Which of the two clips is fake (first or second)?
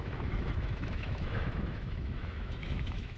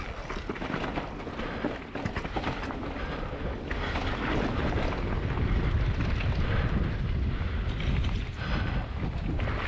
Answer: first